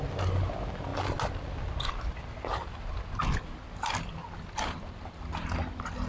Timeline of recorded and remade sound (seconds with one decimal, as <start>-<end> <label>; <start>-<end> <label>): 0.0-6.1 recorded